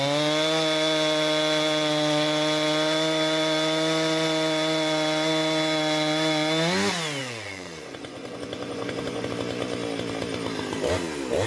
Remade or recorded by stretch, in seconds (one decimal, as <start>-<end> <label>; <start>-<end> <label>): 0.0-7.2 recorded; 7.2-9.3 remade; 9.3-11.5 recorded